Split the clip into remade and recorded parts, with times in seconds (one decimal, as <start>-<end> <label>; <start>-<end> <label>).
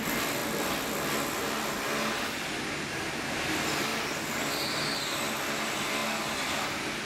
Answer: 0.0-3.9 recorded; 3.9-4.8 remade; 4.8-7.1 recorded